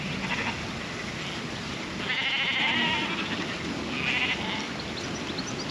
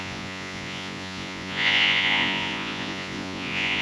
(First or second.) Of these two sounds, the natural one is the first